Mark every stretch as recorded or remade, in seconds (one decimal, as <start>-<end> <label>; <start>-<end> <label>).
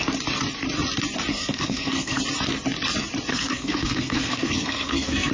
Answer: 0.0-1.3 recorded; 1.3-2.2 remade; 2.2-3.3 recorded; 3.3-5.3 remade